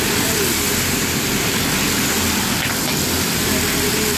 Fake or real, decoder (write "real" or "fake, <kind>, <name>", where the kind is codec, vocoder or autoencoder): real